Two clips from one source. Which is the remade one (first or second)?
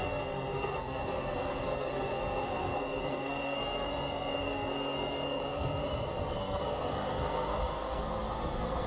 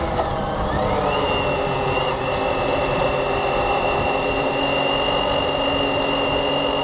first